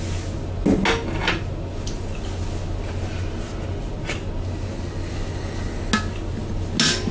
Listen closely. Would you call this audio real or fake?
real